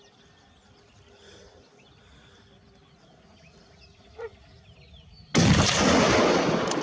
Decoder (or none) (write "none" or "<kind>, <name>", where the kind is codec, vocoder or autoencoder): none